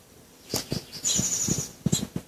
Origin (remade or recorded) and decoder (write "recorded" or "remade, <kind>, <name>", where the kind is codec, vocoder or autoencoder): recorded